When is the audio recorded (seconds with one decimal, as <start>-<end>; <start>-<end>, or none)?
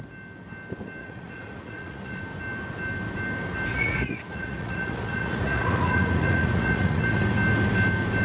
0.0-1.0; 2.2-3.7; 7.2-8.2